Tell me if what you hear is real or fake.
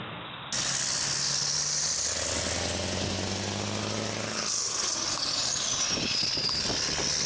real